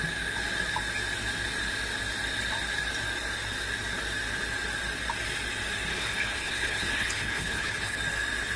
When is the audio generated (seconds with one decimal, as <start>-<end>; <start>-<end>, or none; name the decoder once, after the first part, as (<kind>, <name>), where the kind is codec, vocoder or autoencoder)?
5.9-8.0 (codec, HILCodec)